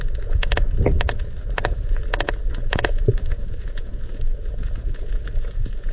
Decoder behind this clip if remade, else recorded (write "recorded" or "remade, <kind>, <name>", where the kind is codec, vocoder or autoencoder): remade, vocoder, Vocos